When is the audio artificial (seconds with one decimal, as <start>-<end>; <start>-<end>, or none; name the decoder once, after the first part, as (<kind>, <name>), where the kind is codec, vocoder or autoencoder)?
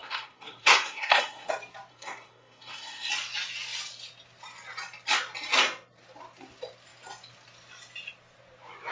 0.0-1.5 (codec, SNAC); 1.9-3.1